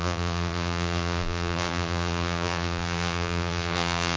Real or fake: fake